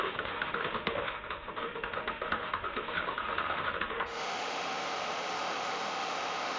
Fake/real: fake